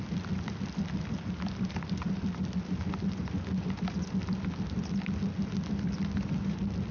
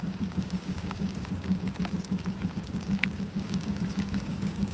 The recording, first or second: first